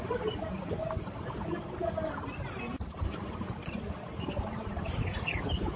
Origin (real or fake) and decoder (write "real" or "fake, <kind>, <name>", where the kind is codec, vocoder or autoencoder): real